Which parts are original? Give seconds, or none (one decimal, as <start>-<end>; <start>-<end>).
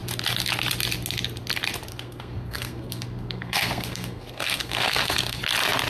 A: 0.0-1.9; 5.4-5.9